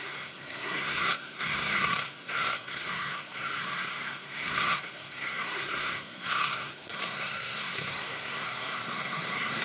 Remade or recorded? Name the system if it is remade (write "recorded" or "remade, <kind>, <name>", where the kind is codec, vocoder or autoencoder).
remade, codec, SNAC